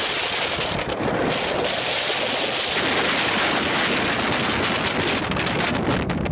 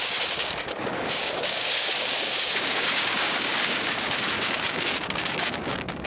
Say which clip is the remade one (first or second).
second